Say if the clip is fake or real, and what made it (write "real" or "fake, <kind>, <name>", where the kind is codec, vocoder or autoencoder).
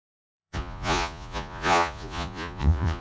fake, vocoder, Vocos